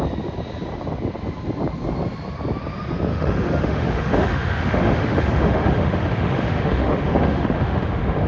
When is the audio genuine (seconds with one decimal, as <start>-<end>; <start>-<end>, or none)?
0.0-3.1